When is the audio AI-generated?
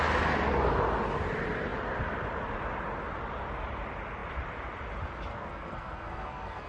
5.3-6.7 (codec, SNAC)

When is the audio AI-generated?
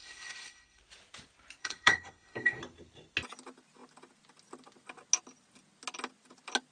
0.0-0.8 (codec, SNAC); 1.6-2.6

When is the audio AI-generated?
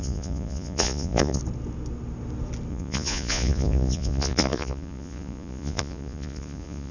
0.0-1.4 (vocoder, Vocos); 2.7-6.9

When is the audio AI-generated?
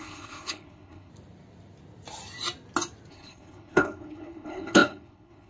0.0-1.1 (codec, HILCodec); 3.1-5.5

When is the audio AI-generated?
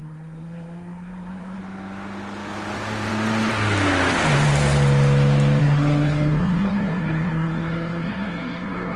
0.0-1.6 (codec, SNAC); 5.6-9.0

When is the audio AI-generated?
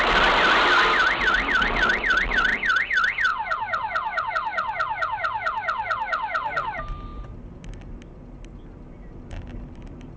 none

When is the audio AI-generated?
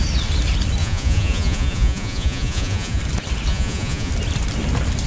0.8-3.0 (vocoder, Vocos); 3.5-4.1